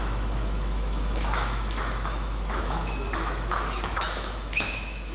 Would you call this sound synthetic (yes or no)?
yes